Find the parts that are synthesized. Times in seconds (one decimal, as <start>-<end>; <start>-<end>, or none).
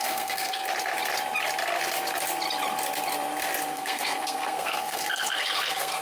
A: 0.0-0.6; 3.7-6.0